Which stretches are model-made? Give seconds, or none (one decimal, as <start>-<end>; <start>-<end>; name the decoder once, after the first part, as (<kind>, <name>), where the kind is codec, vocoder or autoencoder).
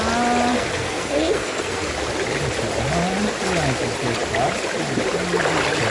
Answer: 0.5-1.9 (codec, SNAC)